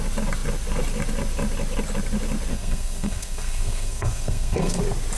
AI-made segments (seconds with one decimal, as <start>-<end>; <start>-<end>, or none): 2.5-4.8